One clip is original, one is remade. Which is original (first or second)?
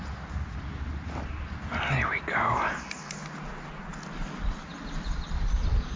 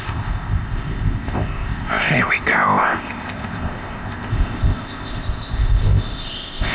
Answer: first